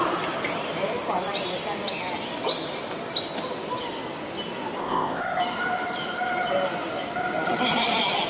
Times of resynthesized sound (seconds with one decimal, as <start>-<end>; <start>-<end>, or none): 4.8-5.4